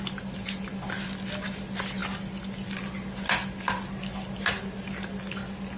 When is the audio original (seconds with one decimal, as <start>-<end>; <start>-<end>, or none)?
0.0-5.8